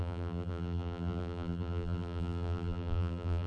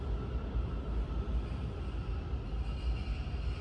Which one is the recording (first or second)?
second